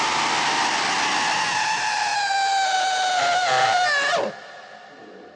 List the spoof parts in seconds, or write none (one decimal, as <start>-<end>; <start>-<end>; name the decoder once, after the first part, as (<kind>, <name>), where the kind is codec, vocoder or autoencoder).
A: none